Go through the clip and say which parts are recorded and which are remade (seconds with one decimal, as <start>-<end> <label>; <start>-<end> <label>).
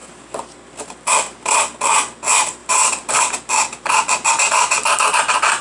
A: 0.0-5.6 recorded